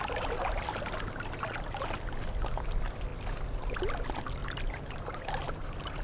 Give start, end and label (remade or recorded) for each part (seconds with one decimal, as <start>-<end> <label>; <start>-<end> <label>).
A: 0.0-4.4 recorded; 4.4-6.0 remade